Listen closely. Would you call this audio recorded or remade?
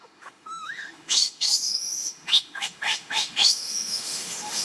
remade